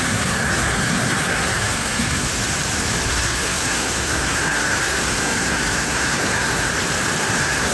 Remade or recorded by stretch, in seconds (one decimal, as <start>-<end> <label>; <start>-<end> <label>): 0.0-2.3 remade; 2.3-3.1 recorded; 3.1-6.7 remade; 6.7-7.2 recorded; 7.2-7.7 remade